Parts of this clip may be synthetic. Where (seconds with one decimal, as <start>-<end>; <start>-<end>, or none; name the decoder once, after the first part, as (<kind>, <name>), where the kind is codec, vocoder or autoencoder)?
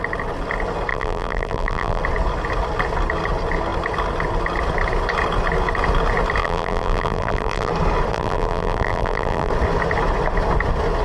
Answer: 0.9-2.0 (vocoder, BigVGAN v2); 6.4-7.7; 8.1-9.5